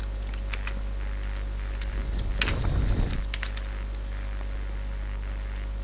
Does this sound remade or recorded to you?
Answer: recorded